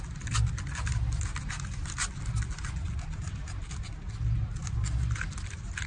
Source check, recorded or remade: recorded